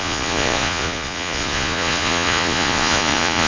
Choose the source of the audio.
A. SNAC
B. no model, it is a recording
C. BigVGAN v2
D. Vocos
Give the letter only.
D